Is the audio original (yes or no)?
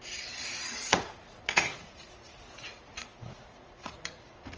no